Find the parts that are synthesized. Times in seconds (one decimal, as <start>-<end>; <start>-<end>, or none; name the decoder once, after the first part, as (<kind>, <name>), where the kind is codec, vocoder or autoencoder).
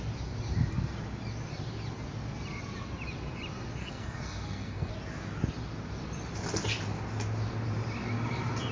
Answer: 3.8-4.9 (codec, SNAC)